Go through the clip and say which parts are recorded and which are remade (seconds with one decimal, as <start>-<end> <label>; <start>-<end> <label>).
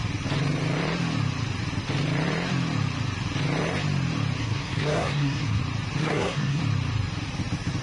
0.0-4.4 recorded; 4.4-5.6 remade; 5.6-6.0 recorded; 6.0-6.6 remade; 6.6-7.8 recorded